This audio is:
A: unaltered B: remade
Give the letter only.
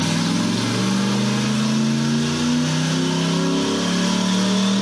A